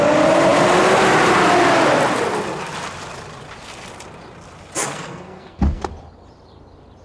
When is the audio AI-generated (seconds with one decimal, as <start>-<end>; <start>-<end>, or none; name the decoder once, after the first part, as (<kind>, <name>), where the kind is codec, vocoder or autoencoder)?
4.8-5.9 (codec, SNAC)